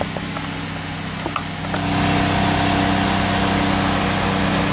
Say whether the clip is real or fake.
real